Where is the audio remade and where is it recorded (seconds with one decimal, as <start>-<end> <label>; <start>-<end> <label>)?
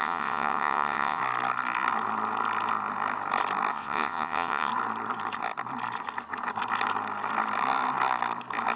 0.0-1.2 remade; 1.2-3.7 recorded; 3.7-4.7 remade; 4.7-8.8 recorded